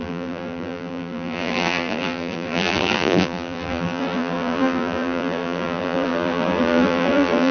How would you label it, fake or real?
fake